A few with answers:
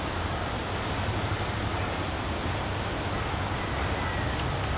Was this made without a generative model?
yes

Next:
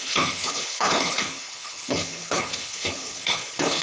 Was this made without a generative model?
no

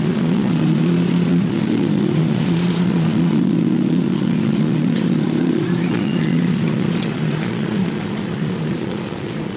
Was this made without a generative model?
no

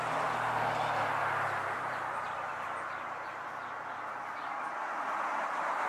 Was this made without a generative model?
yes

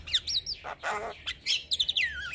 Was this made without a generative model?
yes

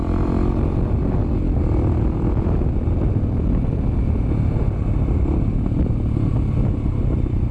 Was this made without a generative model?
yes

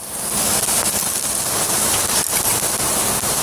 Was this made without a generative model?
yes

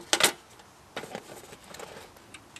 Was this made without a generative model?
yes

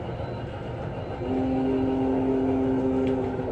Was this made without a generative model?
yes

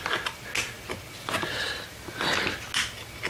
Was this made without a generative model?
yes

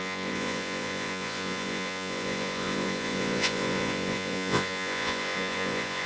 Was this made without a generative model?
no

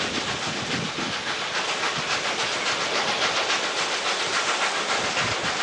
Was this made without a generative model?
yes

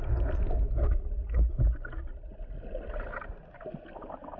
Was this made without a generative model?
yes